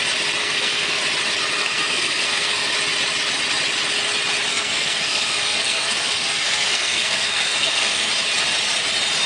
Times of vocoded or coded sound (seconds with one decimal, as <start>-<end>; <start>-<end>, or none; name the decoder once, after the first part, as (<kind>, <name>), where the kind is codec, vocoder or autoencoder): 0.4-1.0 (codec, SNAC); 1.6-2.7; 4.5-8.1